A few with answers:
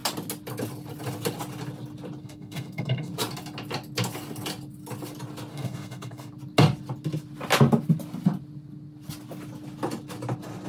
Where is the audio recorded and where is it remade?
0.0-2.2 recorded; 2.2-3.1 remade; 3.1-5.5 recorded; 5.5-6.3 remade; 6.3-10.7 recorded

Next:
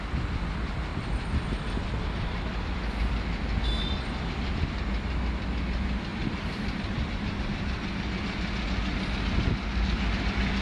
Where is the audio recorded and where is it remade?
0.0-6.1 recorded; 6.1-7.1 remade; 7.1-10.6 recorded

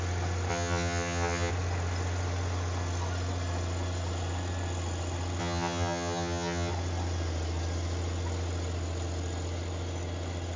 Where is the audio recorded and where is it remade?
0.0-0.5 recorded; 0.5-1.5 remade; 1.5-5.4 recorded; 5.4-6.7 remade; 6.7-10.6 recorded